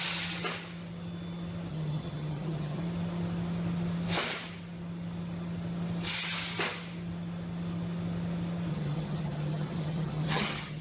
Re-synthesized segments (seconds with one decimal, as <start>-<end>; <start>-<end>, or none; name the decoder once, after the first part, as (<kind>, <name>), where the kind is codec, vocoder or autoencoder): 1.7-2.8 (vocoder, HiFi-GAN); 8.7-10.8